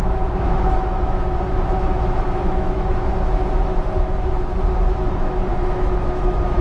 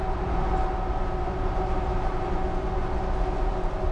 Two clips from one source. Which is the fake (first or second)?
first